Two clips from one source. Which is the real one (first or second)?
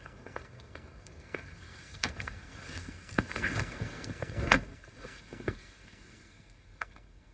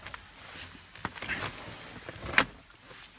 second